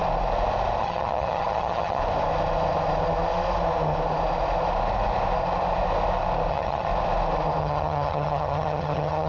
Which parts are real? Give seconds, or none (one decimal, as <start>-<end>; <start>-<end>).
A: 0.0-0.8; 2.0-6.5; 6.9-7.6